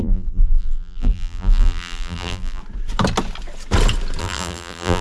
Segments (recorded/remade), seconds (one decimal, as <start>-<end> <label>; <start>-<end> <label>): 0.0-2.6 remade; 2.6-4.2 recorded; 4.2-5.0 remade